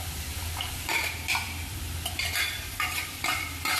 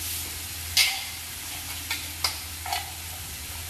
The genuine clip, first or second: second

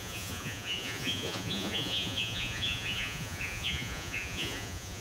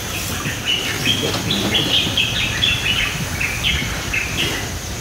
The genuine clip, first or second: second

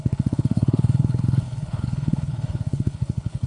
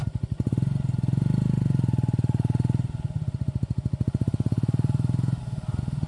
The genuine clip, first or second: second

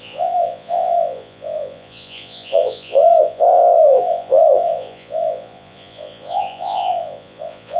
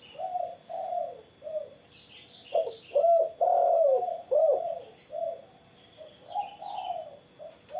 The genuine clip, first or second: second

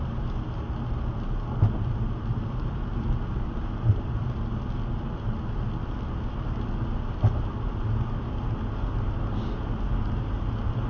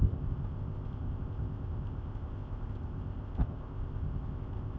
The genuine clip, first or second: first